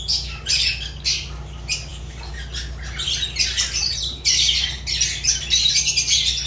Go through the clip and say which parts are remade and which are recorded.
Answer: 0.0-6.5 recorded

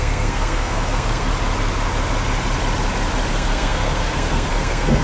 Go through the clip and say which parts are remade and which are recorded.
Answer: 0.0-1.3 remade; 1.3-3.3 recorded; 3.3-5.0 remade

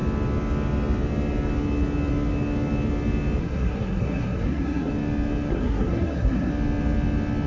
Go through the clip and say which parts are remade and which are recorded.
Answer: 0.0-3.4 recorded; 3.4-4.9 remade; 4.9-5.5 recorded; 5.5-6.5 remade; 6.5-7.5 recorded

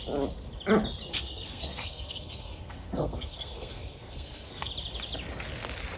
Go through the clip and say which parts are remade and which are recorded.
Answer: 0.0-1.1 recorded; 1.1-4.7 remade; 4.7-6.0 recorded